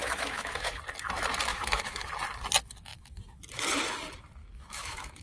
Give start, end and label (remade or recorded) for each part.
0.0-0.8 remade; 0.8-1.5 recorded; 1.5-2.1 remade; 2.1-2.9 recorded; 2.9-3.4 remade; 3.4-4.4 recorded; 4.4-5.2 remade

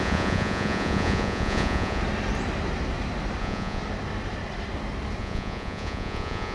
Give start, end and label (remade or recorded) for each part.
0.0-2.0 remade; 2.0-3.4 recorded; 3.4-3.8 remade; 3.8-5.2 recorded; 5.2-6.5 remade

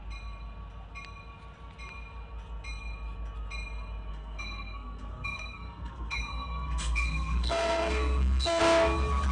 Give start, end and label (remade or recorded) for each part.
0.0-4.1 recorded; 4.1-8.6 remade; 8.6-9.3 recorded

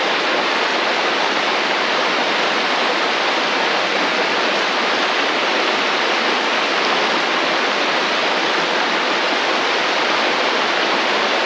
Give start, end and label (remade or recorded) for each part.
0.0-11.5 recorded

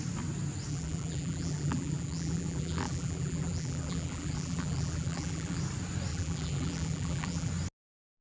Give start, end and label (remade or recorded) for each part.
0.0-0.7 recorded; 0.7-5.6 remade; 5.6-6.1 recorded; 6.1-7.5 remade; 7.5-8.2 recorded

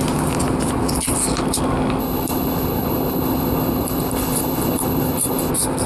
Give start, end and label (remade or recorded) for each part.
0.0-2.0 recorded; 2.0-5.5 remade; 5.5-5.9 recorded